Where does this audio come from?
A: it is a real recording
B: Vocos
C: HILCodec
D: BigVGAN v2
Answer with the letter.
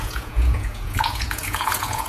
B